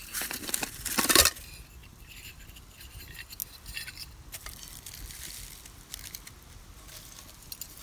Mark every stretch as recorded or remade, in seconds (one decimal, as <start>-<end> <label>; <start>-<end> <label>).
0.0-0.4 recorded; 0.4-1.1 remade; 1.1-1.8 recorded; 1.8-2.3 remade; 2.3-7.8 recorded